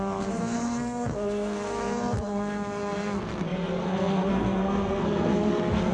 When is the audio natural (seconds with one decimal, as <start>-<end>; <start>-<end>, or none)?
none